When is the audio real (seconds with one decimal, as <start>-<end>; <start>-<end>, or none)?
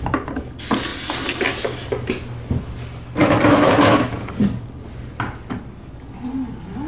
0.0-3.2; 4.1-6.9